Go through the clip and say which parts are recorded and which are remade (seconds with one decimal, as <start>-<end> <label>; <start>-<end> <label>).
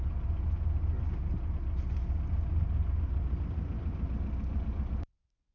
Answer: 0.0-5.5 recorded